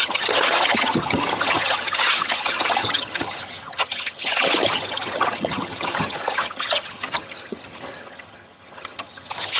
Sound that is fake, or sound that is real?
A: fake